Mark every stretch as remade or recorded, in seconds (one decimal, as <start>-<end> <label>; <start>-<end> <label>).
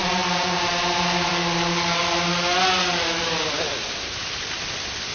0.0-1.3 remade; 1.3-2.0 recorded; 2.0-4.6 remade; 4.6-5.1 recorded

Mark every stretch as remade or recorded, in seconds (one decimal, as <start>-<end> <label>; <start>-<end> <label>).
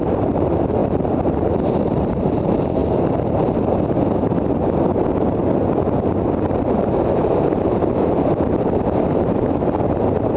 0.0-2.8 remade; 2.8-5.0 recorded; 5.0-5.4 remade; 5.4-6.4 recorded; 6.4-10.4 remade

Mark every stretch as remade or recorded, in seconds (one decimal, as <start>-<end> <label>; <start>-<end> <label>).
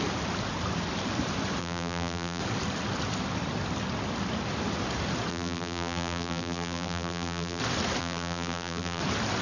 0.0-1.6 recorded; 1.6-2.4 remade; 2.4-5.3 recorded; 5.3-7.6 remade; 7.6-8.0 recorded; 8.0-9.0 remade; 9.0-9.4 recorded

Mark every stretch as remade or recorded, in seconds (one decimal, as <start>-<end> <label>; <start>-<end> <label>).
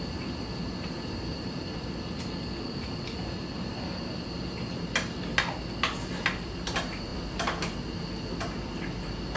0.0-9.4 recorded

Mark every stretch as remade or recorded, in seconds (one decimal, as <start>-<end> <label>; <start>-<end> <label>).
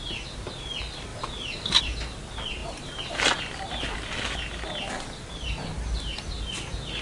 0.0-1.1 recorded; 1.1-1.8 remade; 1.8-2.6 recorded; 2.6-3.4 remade; 3.4-7.0 recorded